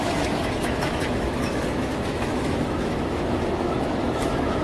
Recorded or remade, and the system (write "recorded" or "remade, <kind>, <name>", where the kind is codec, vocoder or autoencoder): remade, autoencoder, DAC-VAE